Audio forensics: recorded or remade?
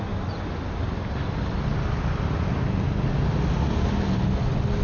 recorded